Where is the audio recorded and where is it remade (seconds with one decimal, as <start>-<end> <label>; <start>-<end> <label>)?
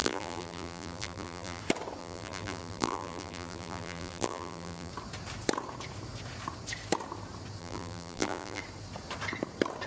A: 0.0-1.6 remade; 1.6-2.0 recorded; 2.0-4.9 remade; 4.9-7.6 recorded; 7.6-8.6 remade; 8.6-9.9 recorded